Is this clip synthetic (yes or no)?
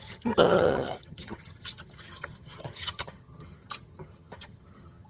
yes